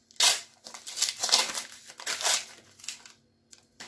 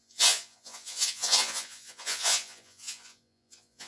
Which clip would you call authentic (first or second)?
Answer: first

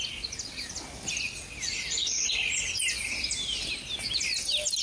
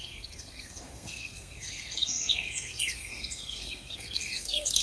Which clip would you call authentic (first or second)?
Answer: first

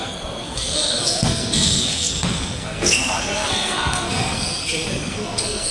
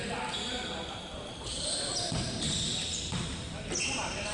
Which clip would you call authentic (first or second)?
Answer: second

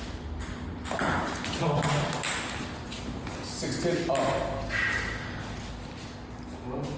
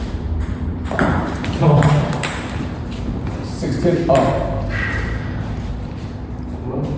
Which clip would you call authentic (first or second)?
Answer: first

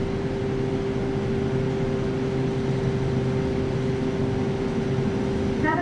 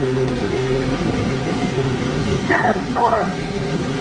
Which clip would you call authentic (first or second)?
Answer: first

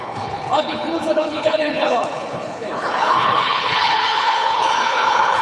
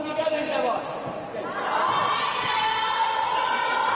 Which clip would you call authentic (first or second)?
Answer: second